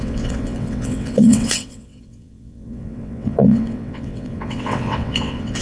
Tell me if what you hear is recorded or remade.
remade